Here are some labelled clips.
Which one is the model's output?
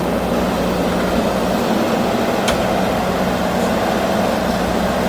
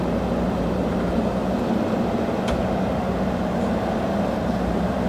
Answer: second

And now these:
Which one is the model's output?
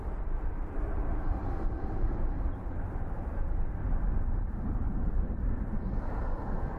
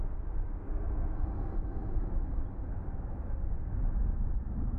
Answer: first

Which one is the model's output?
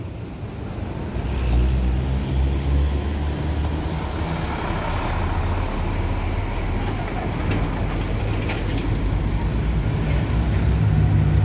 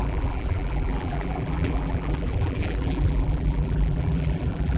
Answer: second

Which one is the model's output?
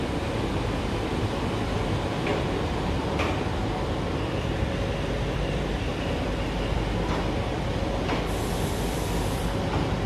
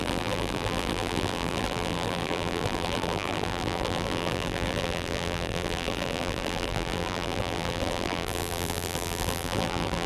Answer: second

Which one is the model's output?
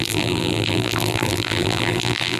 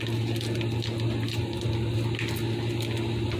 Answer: first